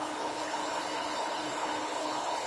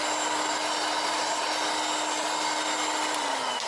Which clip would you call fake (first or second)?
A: first